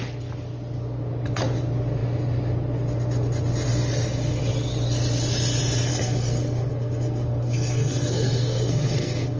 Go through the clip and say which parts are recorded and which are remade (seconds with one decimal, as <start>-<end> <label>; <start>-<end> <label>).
0.0-5.9 recorded; 5.9-9.4 remade